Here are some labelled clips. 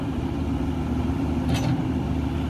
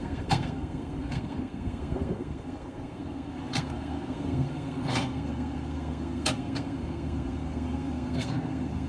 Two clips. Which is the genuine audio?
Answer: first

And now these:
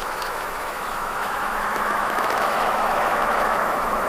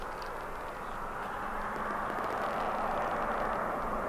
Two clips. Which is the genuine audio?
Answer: second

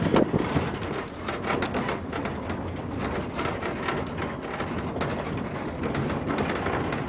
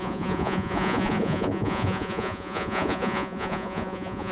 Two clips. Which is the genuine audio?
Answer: first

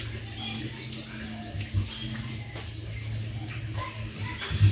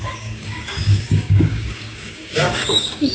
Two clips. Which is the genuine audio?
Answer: first